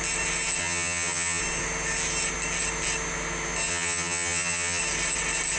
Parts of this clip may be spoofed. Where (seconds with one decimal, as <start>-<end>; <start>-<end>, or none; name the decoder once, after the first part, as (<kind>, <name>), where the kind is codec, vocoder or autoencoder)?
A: 0.6-1.4 (vocoder, HiFi-GAN); 3.7-4.8